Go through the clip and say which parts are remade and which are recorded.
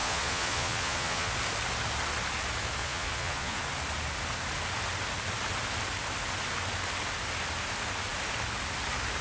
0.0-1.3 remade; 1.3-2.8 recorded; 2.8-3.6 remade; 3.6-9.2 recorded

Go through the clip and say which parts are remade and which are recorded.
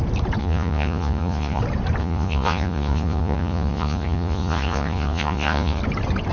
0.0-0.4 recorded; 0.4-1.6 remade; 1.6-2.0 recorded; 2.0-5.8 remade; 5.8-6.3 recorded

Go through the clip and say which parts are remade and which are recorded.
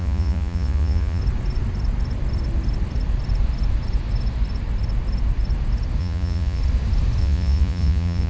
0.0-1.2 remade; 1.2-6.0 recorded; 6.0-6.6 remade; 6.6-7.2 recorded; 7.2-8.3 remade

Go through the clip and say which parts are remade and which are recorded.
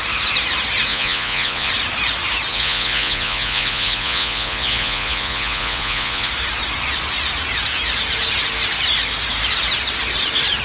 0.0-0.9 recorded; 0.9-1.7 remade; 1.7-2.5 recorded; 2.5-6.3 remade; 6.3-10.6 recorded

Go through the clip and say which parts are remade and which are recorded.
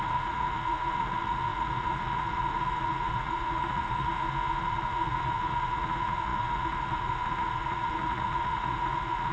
0.0-4.1 remade; 4.1-4.6 recorded; 4.6-9.3 remade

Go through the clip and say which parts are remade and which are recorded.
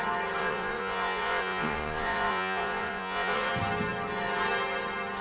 0.0-0.4 recorded; 0.4-3.5 remade; 3.5-5.2 recorded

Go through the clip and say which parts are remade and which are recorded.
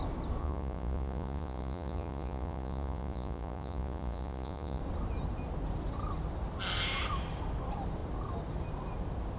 0.0-0.4 recorded; 0.4-4.8 remade; 4.8-9.4 recorded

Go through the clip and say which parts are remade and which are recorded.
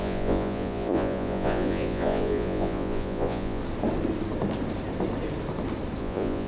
0.0-3.6 remade; 3.6-6.0 recorded; 6.0-6.5 remade